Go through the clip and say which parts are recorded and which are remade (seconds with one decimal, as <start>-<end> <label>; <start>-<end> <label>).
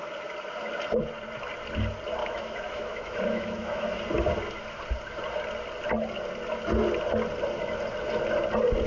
0.0-2.2 recorded; 2.2-4.0 remade; 4.0-8.9 recorded